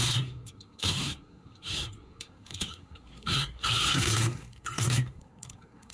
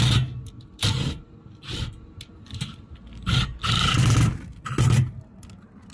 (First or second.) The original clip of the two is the second